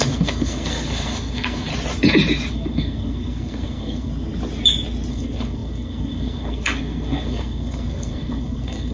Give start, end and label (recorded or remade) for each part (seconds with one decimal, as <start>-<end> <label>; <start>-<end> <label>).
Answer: 0.0-1.7 remade; 1.7-2.5 recorded; 2.5-4.1 remade; 4.1-5.1 recorded; 5.1-8.9 remade

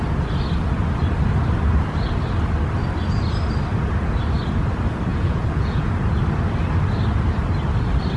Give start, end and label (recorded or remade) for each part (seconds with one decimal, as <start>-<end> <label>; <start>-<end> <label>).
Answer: 0.0-5.1 recorded; 5.1-5.9 remade; 5.9-8.2 recorded

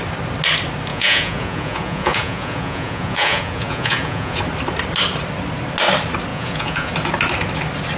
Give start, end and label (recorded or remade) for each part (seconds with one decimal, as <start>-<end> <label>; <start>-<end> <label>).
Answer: 0.0-0.9 recorded; 0.9-4.4 remade; 4.4-6.3 recorded; 6.3-6.9 remade; 6.9-8.0 recorded

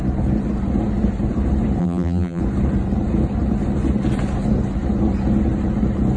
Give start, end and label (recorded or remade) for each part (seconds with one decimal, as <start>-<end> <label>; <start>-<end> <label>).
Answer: 0.0-1.8 recorded; 1.8-2.4 remade; 2.4-6.2 recorded